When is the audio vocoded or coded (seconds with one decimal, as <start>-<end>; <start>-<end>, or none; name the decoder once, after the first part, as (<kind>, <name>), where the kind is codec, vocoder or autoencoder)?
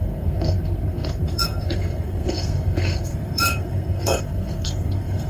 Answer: 0.0-5.3 (codec, SNAC)